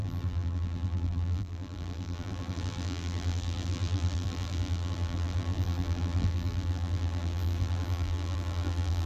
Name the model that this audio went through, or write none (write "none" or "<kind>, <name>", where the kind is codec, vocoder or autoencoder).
vocoder, BigVGAN v2